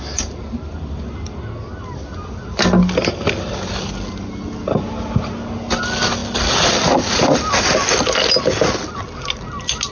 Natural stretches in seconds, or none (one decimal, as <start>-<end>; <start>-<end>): 0.0-9.9